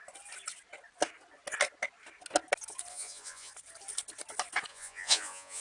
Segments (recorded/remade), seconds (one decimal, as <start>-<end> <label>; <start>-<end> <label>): 0.0-2.9 recorded; 2.9-3.5 remade; 3.5-4.7 recorded; 4.7-5.6 remade